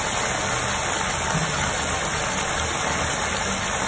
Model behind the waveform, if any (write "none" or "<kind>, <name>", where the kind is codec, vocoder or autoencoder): none